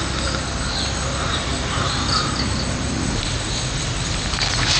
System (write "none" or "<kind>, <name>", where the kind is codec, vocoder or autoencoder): none